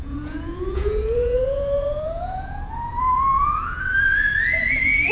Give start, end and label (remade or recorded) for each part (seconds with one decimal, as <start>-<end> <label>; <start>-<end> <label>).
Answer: 0.0-4.3 remade; 4.3-5.1 recorded